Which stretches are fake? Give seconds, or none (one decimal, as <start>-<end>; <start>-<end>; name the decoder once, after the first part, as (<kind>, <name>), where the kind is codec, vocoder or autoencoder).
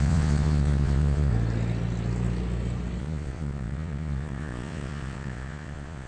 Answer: 0.0-1.3 (vocoder, Vocos); 3.0-6.1